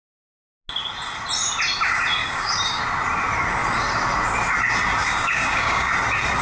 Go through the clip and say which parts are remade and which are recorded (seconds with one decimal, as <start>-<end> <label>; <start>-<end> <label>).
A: 0.0-2.2 recorded; 2.2-2.8 remade; 2.8-5.0 recorded; 5.0-5.9 remade; 5.9-6.4 recorded